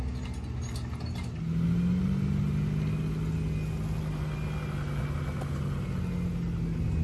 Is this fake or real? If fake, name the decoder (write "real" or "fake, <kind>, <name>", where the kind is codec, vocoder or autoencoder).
real